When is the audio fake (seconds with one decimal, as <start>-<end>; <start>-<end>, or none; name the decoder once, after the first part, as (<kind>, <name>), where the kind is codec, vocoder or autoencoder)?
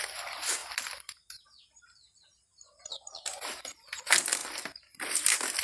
0.6-1.3 (vocoder, BigVGAN v2)